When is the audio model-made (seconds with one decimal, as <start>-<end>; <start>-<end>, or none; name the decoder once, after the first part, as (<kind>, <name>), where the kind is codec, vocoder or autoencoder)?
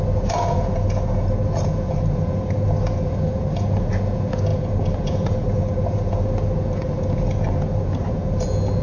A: 0.0-8.8 (vocoder, Vocos)